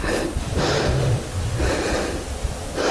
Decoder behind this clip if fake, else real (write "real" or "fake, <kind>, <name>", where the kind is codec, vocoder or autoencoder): fake, vocoder, BigVGAN v2